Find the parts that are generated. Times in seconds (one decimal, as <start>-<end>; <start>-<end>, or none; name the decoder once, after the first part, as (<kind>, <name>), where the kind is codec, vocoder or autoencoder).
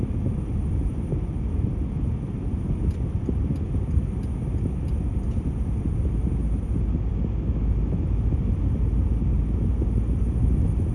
none